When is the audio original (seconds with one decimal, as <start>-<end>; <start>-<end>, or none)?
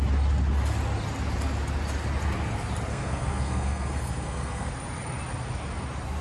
0.0-2.9; 4.7-6.2